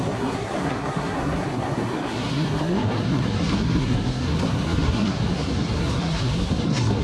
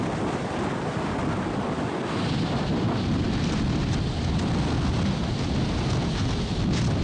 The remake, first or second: first